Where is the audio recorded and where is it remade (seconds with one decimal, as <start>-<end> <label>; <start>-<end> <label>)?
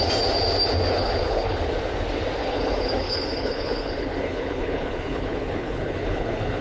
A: 0.0-0.9 recorded; 0.9-1.7 remade; 1.7-2.4 recorded; 2.4-6.6 remade